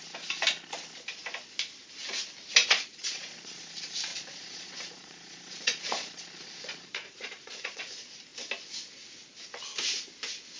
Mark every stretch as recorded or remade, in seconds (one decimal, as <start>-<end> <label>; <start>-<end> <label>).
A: 0.0-2.6 recorded; 2.6-3.6 remade; 3.6-4.1 recorded; 4.1-7.8 remade; 7.8-10.6 recorded